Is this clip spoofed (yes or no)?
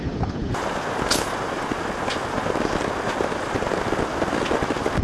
no